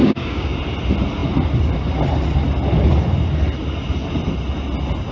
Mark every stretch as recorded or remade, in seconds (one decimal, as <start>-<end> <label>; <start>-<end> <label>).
0.0-0.6 remade; 0.6-5.1 recorded